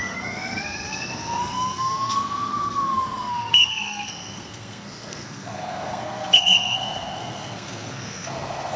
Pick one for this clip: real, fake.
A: fake